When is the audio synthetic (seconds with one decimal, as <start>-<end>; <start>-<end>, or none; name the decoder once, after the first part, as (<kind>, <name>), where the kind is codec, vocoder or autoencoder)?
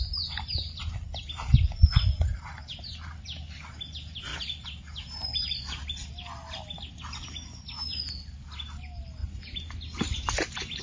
none